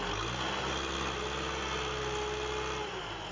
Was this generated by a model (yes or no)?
no